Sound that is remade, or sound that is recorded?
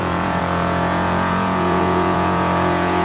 remade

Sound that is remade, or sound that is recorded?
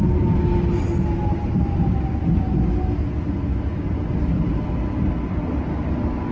recorded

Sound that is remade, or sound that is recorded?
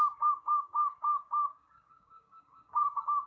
remade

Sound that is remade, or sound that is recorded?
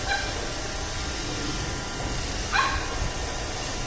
recorded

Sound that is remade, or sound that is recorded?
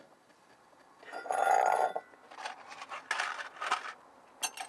recorded